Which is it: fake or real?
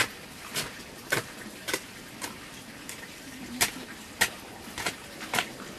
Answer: real